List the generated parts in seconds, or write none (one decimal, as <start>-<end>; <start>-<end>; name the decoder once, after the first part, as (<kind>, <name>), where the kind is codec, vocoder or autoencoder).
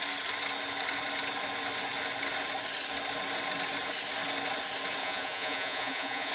5.0-6.3 (vocoder, Vocos)